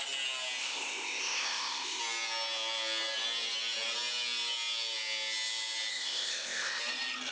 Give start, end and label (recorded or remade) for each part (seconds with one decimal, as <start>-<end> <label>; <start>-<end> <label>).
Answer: 0.0-0.6 recorded; 0.6-2.0 remade; 2.0-5.9 recorded; 5.9-6.8 remade; 6.8-7.3 recorded